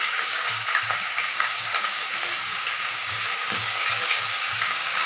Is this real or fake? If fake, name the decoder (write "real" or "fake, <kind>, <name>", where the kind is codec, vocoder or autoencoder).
fake, codec, DAC